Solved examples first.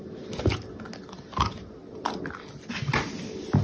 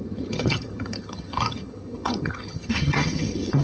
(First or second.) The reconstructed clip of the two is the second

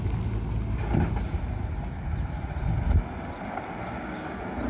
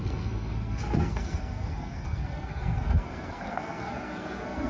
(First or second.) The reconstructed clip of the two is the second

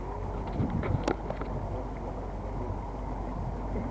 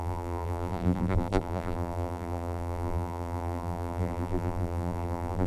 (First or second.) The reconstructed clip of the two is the second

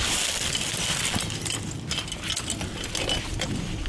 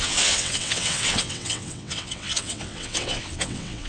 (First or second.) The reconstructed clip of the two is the second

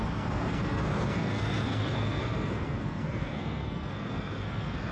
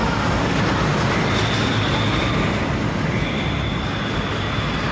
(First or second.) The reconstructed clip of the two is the first